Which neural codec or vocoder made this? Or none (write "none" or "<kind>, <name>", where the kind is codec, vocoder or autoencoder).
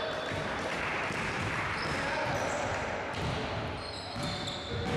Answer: none